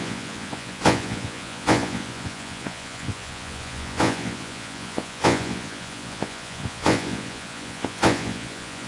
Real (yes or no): no